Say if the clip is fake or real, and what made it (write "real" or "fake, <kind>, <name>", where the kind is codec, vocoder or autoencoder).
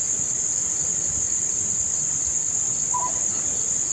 real